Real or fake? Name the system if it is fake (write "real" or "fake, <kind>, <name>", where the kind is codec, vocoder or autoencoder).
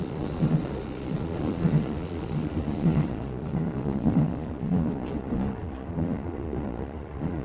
fake, vocoder, Vocos